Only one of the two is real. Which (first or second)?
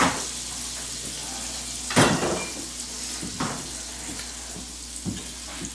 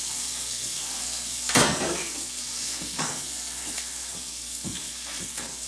first